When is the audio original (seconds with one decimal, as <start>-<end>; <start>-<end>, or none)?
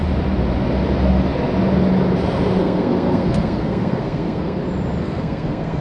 0.0-2.6; 4.6-5.0